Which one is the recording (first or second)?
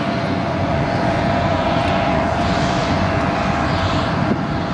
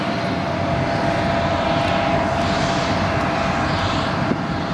second